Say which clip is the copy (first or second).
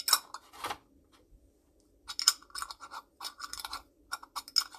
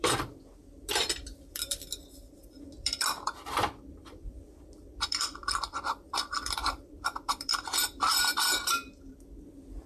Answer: second